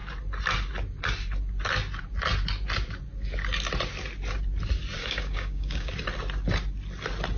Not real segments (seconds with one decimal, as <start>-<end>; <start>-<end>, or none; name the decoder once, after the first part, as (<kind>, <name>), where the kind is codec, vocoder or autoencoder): 5.0-5.9 (codec, DAC)